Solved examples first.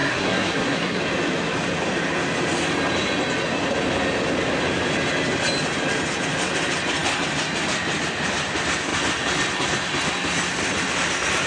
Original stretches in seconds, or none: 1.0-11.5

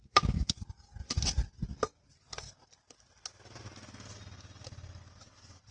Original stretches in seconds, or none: 0.0-5.7

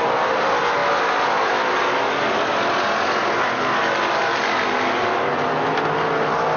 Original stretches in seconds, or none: 0.0-6.6

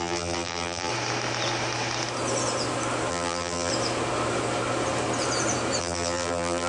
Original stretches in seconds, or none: 0.9-3.1; 3.7-5.8

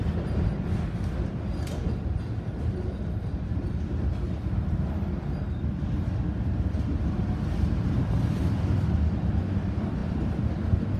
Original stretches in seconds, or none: 0.0-11.0

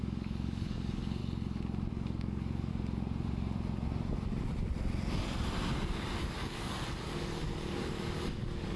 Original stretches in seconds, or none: 1.2-1.9; 2.7-6.2

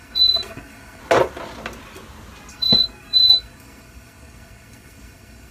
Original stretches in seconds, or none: 1.0-2.5